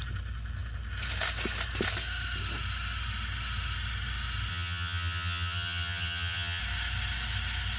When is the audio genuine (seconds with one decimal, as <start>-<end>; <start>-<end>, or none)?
0.0-4.5; 6.6-7.8